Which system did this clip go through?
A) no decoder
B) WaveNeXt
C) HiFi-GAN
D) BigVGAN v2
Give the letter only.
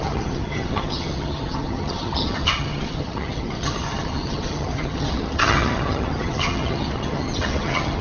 C